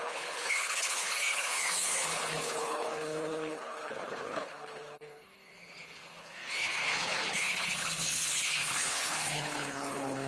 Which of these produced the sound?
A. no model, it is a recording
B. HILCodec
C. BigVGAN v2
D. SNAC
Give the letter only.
B